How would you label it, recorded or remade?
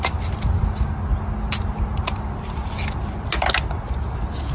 recorded